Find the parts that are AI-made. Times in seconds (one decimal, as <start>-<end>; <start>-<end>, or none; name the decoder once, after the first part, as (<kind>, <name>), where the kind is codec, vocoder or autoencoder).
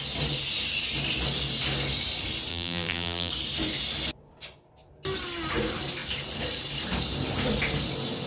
2.5-3.3 (vocoder, BigVGAN v2)